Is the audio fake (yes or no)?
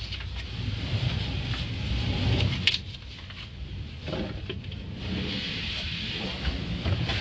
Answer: no